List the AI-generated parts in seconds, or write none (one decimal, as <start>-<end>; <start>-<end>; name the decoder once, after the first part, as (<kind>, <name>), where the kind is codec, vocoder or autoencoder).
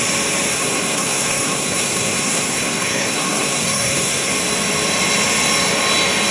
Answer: 0.5-4.3 (codec, SNAC)